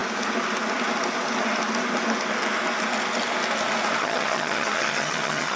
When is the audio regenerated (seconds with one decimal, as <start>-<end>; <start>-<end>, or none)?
4.0-5.6